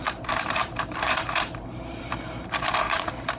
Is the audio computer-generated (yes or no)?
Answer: yes